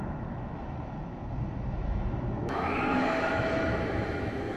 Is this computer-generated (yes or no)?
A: yes